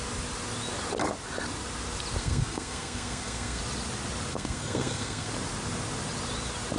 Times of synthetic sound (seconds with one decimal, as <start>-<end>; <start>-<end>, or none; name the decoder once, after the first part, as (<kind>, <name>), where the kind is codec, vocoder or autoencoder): 2.2-3.6 (codec, SNAC); 4.3-5.3